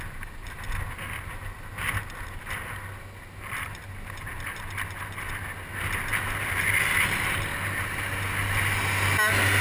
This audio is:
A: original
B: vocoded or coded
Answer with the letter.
A